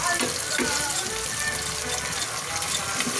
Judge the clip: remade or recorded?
recorded